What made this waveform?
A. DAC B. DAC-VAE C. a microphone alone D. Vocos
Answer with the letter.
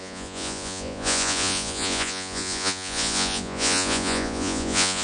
D